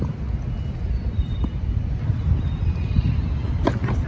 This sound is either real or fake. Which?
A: real